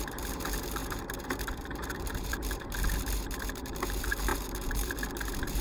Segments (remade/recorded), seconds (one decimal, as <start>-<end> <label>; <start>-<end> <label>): 0.0-5.6 remade